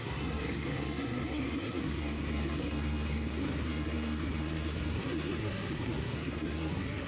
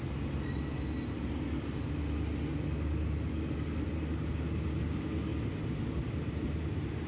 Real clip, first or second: second